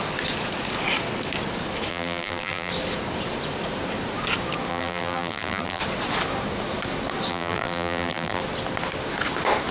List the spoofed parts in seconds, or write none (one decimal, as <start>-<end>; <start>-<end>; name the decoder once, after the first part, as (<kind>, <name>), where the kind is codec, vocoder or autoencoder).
1.9-2.7 (vocoder, BigVGAN v2); 4.7-5.8; 7.3-8.4